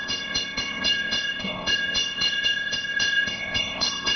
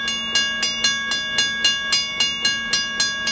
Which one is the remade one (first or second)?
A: first